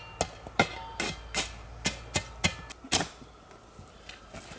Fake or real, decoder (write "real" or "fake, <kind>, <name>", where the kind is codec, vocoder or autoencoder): real